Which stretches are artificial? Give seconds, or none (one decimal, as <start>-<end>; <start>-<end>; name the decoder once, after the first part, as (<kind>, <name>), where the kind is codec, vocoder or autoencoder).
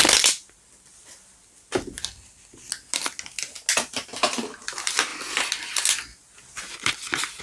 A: none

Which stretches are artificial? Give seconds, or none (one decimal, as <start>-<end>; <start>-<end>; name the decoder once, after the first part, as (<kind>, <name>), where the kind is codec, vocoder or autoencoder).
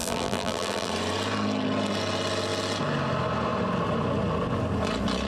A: 0.0-0.9 (vocoder, BigVGAN v2)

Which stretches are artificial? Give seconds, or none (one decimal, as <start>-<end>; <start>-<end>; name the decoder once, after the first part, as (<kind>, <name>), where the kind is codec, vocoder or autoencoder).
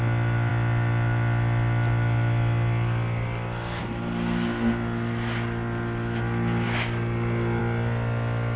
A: none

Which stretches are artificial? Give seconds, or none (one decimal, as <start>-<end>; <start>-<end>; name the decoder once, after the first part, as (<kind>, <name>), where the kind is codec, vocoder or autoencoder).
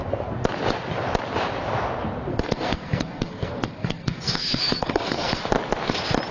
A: 2.3-5.4 (codec, SNAC)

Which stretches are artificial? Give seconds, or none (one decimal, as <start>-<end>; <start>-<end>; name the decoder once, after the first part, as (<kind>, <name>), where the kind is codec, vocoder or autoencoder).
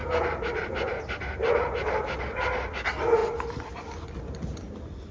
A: none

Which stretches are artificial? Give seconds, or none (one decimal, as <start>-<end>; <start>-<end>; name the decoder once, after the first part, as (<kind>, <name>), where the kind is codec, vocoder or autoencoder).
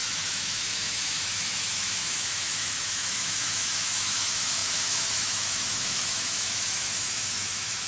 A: 0.0-7.9 (autoencoder, DAC-VAE)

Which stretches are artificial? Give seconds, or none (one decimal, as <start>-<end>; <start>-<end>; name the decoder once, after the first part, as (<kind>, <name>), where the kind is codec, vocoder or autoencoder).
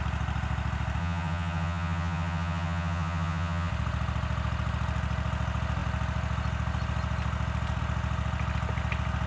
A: 1.0-3.7 (vocoder, HiFi-GAN)